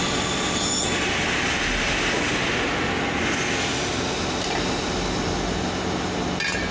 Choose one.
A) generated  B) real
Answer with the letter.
B